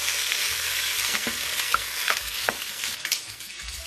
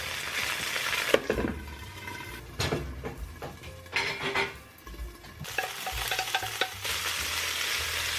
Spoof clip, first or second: first